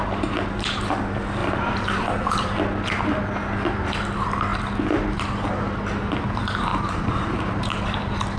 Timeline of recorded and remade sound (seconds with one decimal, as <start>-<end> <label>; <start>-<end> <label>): 0.0-1.4 recorded; 1.4-2.6 remade; 2.6-6.7 recorded; 6.7-7.8 remade; 7.8-8.4 recorded